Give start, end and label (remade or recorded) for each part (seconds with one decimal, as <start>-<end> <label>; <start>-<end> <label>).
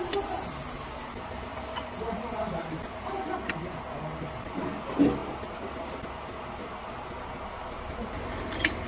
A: 0.0-8.9 recorded